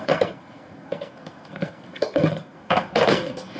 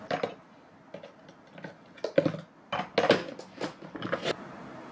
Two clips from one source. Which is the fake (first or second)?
first